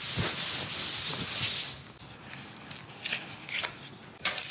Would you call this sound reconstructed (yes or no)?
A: no